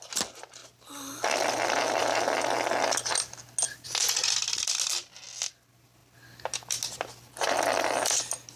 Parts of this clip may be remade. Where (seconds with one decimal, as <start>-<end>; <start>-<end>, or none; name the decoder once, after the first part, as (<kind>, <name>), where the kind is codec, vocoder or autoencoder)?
none